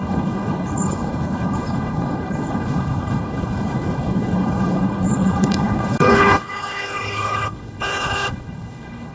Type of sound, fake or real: fake